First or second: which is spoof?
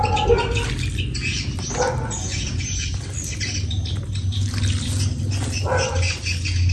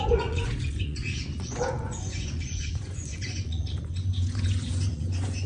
second